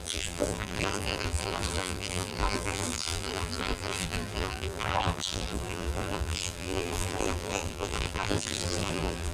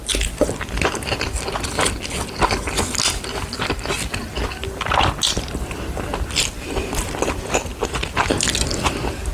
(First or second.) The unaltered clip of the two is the second